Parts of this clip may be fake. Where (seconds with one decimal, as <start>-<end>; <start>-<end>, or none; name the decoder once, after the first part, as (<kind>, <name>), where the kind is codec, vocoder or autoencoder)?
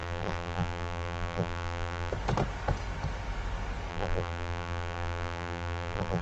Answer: 0.0-2.1 (vocoder, BigVGAN v2); 3.9-6.2